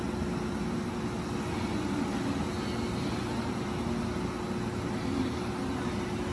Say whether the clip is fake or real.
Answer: real